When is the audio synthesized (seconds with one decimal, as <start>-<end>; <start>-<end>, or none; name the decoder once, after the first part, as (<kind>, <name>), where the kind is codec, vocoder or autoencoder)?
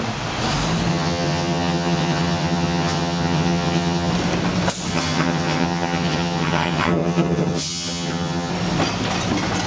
0.9-4.1 (vocoder, HiFi-GAN); 4.9-8.5